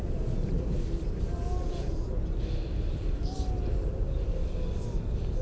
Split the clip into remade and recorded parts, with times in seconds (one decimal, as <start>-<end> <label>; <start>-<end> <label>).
0.0-1.4 recorded; 1.4-2.1 remade; 2.1-5.4 recorded